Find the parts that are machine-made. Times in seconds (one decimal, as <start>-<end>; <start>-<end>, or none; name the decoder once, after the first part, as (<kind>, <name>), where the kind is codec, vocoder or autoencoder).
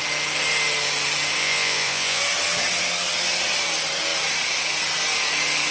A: 1.4-2.2 (vocoder, Vocos)